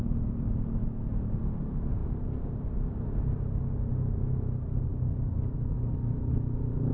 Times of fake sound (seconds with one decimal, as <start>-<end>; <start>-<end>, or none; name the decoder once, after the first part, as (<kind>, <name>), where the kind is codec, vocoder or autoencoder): none